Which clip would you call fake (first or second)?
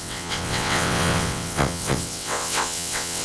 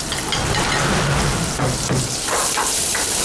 first